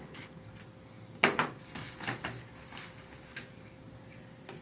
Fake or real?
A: real